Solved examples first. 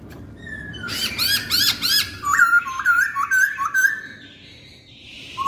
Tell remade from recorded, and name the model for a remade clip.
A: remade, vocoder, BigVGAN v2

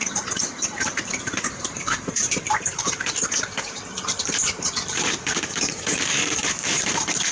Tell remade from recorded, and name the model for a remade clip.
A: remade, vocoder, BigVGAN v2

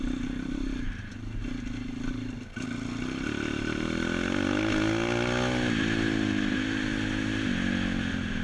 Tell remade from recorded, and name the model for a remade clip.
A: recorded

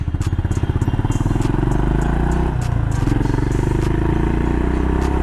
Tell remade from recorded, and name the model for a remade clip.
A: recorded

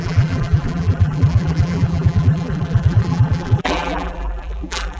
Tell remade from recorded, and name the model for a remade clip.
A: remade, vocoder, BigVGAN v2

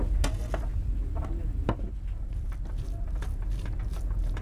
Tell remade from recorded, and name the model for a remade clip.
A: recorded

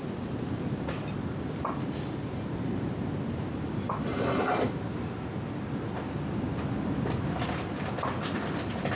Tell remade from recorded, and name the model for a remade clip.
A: recorded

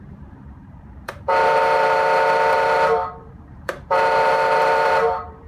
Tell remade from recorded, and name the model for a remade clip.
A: remade, vocoder, BigVGAN v2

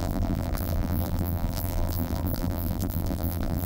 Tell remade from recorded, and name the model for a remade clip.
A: remade, vocoder, BigVGAN v2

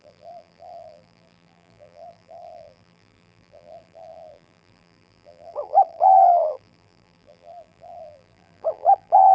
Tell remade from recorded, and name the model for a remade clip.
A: remade, vocoder, BigVGAN v2